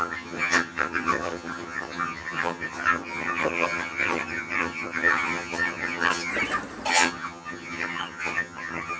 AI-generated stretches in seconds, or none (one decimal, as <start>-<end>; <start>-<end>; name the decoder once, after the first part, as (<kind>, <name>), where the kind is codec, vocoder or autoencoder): 0.0-6.3 (vocoder, HiFi-GAN); 6.9-9.0

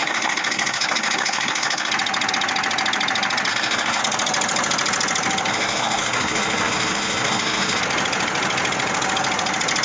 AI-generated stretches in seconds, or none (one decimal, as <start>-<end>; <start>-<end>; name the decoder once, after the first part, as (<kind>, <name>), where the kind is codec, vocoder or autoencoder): 0.0-1.9 (codec, SNAC); 3.5-4.0; 5.5-7.8

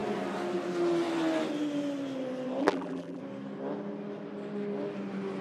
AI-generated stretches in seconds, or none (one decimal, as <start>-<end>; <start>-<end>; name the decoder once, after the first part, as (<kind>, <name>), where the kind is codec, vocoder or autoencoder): 2.6-3.2 (vocoder, BigVGAN v2)

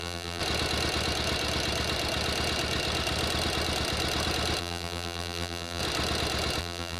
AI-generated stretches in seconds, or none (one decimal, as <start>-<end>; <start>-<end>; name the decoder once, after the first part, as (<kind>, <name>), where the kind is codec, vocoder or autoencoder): 0.0-0.4 (vocoder, BigVGAN v2); 4.6-5.8; 6.6-7.0

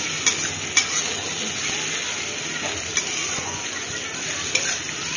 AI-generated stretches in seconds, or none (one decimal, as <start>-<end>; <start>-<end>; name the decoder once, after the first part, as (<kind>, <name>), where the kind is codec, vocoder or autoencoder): 3.3-3.9 (vocoder, Vocos)

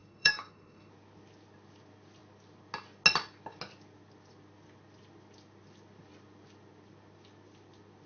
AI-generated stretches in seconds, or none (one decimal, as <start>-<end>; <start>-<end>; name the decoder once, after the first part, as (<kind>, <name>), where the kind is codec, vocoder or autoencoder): 0.0-0.9 (codec, SNAC)

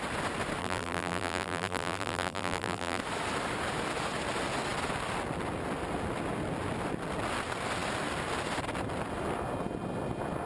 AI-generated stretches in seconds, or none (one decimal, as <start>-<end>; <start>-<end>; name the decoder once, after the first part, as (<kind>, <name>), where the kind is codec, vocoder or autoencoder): 0.6-3.0 (vocoder, BigVGAN v2)